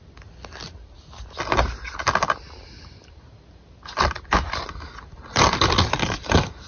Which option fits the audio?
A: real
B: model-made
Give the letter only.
A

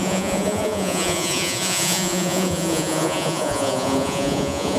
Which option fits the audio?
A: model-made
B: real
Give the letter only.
A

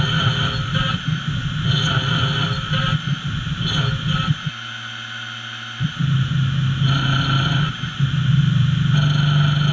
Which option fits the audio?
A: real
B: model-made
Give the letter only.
A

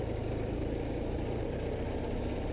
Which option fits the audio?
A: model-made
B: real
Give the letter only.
B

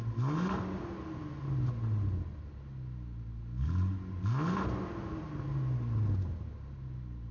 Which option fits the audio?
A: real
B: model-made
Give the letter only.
A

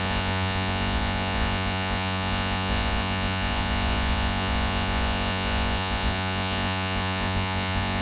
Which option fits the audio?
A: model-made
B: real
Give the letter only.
A